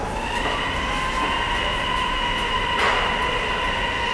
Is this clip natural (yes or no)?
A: yes